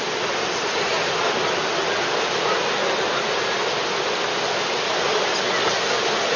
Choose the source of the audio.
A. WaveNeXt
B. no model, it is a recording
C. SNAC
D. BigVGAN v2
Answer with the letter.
B